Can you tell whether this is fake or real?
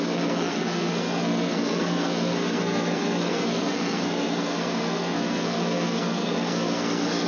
fake